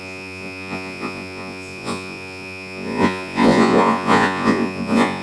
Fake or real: fake